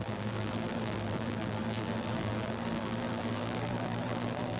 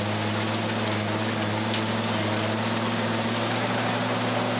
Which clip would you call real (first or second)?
second